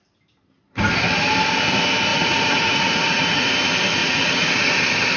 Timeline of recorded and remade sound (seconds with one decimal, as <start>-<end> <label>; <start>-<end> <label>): 0.0-2.1 recorded; 2.1-3.5 remade; 3.5-4.0 recorded; 4.0-4.7 remade; 4.7-5.2 recorded

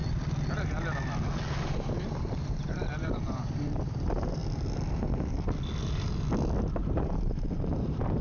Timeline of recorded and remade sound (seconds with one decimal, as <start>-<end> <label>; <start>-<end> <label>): 0.0-1.6 recorded; 1.6-4.4 remade; 4.4-6.8 recorded; 6.8-8.2 remade